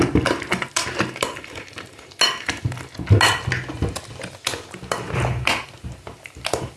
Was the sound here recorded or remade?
recorded